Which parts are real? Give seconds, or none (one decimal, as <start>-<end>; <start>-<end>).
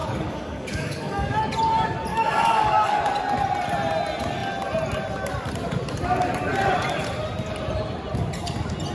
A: 1.4-2.1; 3.0-8.9